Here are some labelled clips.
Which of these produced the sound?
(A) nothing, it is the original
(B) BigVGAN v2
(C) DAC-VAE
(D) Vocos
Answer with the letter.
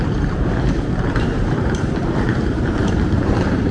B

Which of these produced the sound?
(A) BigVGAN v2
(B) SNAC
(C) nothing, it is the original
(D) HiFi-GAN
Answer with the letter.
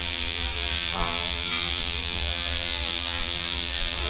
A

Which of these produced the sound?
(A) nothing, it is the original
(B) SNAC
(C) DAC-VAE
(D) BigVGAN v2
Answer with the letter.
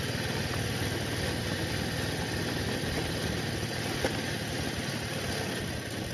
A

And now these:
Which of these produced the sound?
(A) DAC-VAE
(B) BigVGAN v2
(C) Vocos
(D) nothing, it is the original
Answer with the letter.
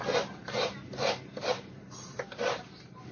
B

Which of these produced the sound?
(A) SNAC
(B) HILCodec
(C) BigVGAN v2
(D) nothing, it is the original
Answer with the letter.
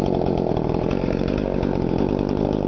C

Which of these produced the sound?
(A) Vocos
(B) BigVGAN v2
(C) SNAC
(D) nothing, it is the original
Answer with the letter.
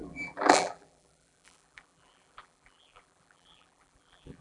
B